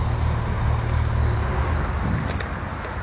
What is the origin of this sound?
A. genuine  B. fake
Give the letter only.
A